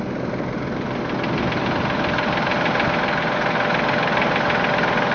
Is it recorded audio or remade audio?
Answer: recorded